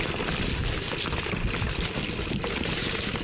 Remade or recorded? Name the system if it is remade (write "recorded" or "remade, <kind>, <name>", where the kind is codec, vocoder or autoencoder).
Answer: recorded